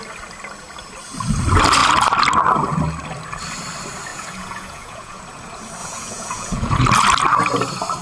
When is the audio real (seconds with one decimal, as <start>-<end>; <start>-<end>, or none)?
0.0-4.1; 5.2-5.8; 6.8-8.0